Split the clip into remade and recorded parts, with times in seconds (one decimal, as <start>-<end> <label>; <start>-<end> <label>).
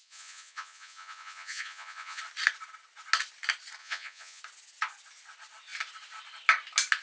0.0-2.2 remade; 2.2-3.8 recorded; 3.8-4.4 remade; 4.4-7.0 recorded